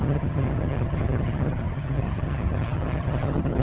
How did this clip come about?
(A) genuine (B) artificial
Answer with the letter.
B